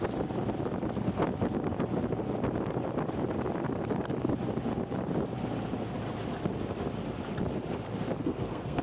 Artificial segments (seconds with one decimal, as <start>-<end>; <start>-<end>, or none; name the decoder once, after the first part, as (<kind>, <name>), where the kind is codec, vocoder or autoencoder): 8.2-8.8 (codec, SNAC)